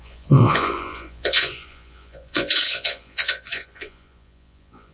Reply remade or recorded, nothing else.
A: remade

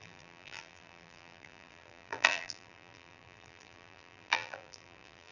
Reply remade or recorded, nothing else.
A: remade